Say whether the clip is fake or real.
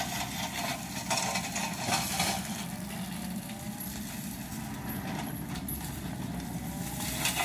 real